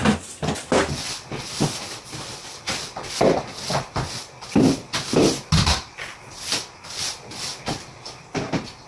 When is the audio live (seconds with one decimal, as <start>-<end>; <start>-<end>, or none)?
0.0-8.9

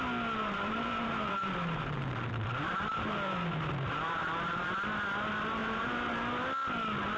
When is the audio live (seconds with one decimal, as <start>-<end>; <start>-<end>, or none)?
0.0-0.4; 4.7-5.6; 6.3-7.2